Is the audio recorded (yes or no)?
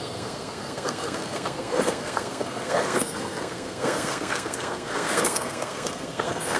no